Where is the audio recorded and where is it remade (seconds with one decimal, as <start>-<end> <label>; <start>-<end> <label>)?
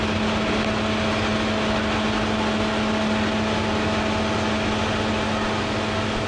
0.0-6.3 recorded